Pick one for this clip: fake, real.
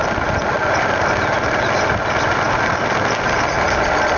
real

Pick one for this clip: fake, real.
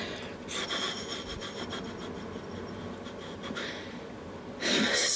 real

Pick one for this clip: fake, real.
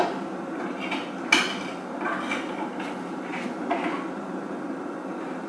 real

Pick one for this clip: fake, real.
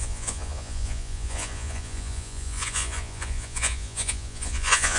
fake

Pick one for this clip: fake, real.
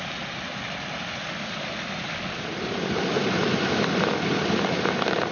real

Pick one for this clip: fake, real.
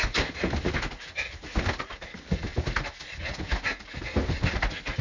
real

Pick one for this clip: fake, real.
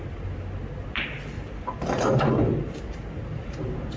real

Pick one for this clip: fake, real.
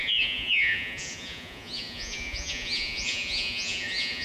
fake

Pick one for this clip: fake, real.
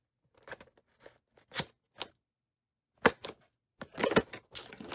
real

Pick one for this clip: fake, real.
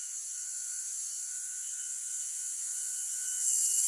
fake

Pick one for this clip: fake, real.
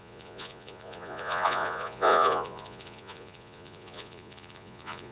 fake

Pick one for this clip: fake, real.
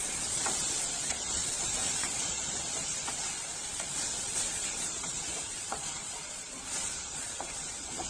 fake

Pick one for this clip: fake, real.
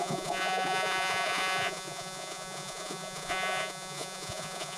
fake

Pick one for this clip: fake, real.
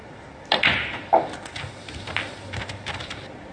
real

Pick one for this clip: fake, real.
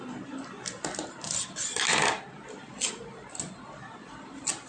real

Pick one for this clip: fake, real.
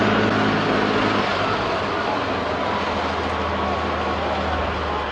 real